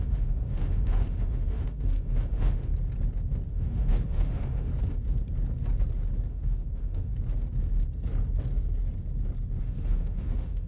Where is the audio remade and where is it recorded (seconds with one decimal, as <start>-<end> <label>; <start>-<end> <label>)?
0.0-2.7 remade; 2.7-3.5 recorded; 3.5-4.7 remade; 4.7-6.3 recorded; 6.3-7.1 remade; 7.1-9.6 recorded; 9.6-10.7 remade